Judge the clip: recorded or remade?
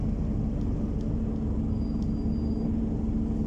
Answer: recorded